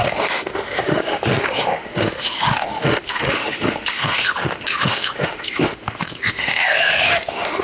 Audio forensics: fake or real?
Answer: fake